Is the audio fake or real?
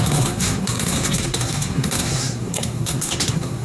fake